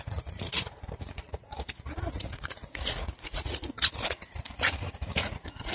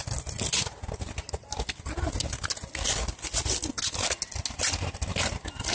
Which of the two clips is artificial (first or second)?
first